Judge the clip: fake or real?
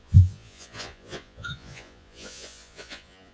fake